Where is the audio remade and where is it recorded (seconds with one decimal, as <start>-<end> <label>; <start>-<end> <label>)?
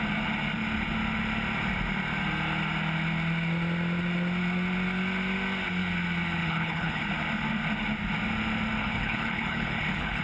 0.0-6.4 recorded; 6.4-7.0 remade; 7.0-8.8 recorded; 8.8-10.2 remade